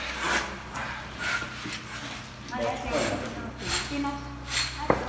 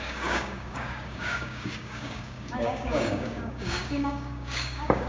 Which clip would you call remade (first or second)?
second